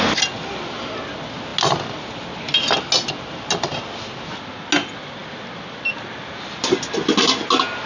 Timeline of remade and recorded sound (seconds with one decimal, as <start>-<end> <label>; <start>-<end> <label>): 0.0-7.9 recorded